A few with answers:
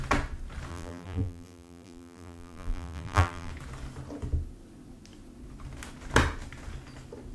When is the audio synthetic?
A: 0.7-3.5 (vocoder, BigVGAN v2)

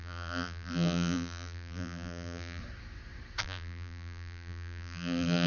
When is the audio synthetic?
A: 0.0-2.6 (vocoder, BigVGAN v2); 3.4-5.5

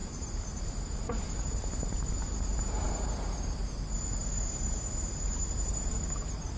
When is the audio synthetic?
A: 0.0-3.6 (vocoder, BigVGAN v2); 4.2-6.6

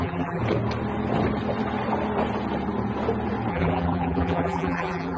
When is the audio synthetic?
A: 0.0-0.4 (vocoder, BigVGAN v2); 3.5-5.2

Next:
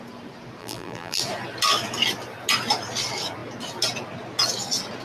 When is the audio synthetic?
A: 0.6-1.2 (vocoder, BigVGAN v2)

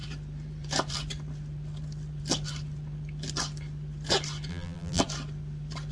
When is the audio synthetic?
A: 4.5-5.0 (vocoder, BigVGAN v2)

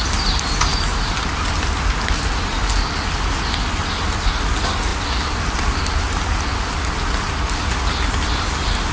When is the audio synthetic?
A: none

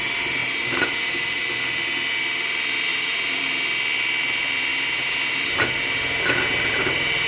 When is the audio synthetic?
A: 0.4-1.4 (vocoder, BigVGAN v2); 2.9-3.4; 4.7-7.3